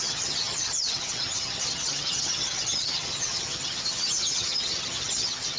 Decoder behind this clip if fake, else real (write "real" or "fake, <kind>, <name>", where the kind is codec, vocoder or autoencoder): fake, vocoder, HiFi-GAN